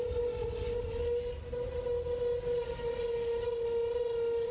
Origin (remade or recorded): recorded